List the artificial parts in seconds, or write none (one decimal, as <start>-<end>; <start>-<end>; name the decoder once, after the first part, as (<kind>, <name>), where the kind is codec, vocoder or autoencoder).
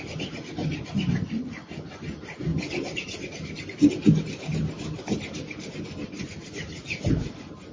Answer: none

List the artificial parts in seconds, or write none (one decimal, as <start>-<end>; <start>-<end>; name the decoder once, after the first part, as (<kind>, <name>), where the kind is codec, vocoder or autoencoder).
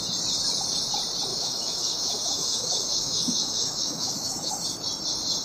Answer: 1.3-4.5 (autoencoder, DAC-VAE)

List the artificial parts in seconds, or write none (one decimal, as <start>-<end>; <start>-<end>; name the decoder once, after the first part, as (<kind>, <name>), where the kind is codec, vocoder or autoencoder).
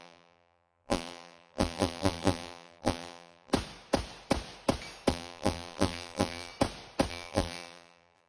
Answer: 0.0-3.5 (vocoder, BigVGAN v2); 5.1-6.5; 7.1-8.3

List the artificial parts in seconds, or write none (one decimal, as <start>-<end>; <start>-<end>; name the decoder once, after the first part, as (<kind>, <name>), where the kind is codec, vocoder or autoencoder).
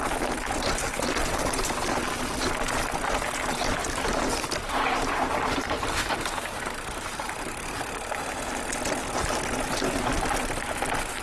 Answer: 3.8-7.8 (vocoder, BigVGAN v2)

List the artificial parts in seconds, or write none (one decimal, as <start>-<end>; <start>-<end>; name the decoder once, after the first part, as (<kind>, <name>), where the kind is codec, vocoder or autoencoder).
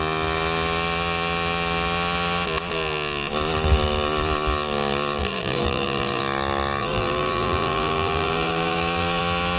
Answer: 5.2-6.2 (vocoder, BigVGAN v2); 6.8-9.2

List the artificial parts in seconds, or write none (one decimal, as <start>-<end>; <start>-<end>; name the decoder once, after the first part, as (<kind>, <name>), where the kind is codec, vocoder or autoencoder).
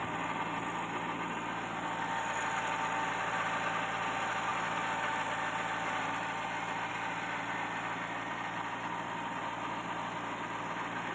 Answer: none